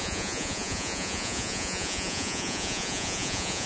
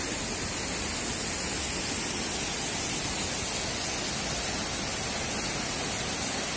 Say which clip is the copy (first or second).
first